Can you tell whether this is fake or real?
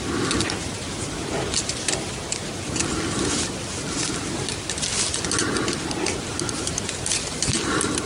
real